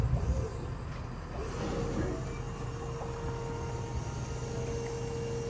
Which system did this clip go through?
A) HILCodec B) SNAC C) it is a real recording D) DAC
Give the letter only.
C